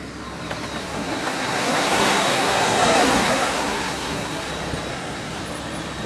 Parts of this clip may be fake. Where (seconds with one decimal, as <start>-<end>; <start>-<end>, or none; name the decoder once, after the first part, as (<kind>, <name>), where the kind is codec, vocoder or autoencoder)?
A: 0.8-4.5 (codec, SNAC); 4.9-5.4